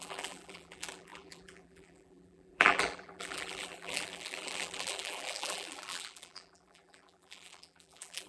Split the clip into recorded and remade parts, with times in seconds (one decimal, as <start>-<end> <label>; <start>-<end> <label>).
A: 0.0-8.3 remade